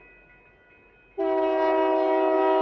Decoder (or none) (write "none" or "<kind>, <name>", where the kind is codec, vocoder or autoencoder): none